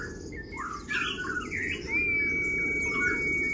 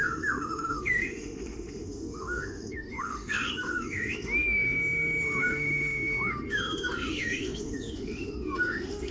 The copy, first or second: second